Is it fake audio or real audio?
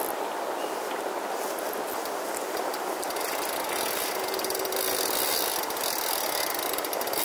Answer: real